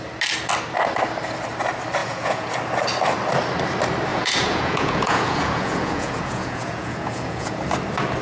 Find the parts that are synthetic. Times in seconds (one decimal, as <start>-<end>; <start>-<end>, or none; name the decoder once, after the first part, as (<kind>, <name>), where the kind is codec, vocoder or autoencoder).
2.0-2.5 (vocoder, Vocos); 4.1-7.6